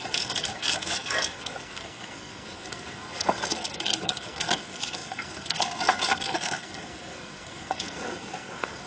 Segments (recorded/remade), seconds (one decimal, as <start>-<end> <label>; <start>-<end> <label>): 0.0-8.9 remade